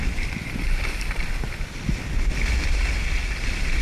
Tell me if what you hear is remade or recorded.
recorded